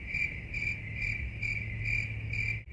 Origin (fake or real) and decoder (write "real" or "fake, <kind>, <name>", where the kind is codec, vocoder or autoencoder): real